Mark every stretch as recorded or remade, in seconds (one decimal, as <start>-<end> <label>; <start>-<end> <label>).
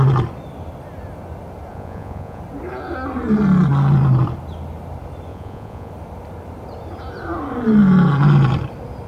0.0-1.7 recorded; 1.7-2.4 remade; 2.4-5.3 recorded; 5.3-5.9 remade; 5.9-9.1 recorded